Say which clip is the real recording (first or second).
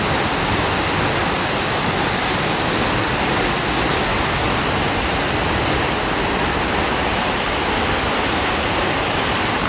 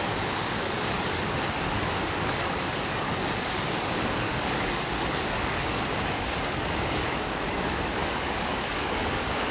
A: first